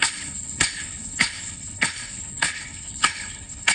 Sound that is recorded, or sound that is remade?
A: remade